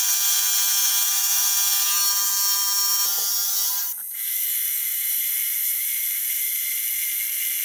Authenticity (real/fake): real